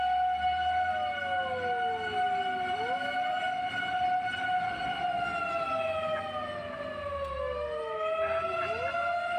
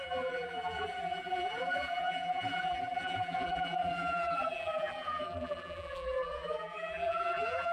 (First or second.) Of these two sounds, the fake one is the second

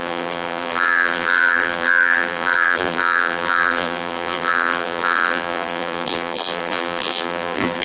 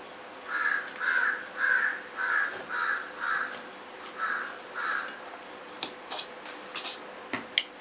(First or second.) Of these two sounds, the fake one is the first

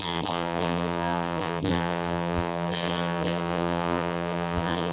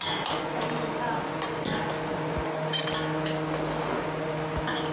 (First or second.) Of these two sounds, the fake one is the first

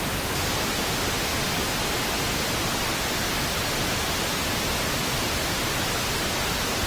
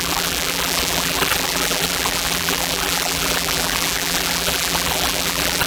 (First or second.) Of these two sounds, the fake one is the second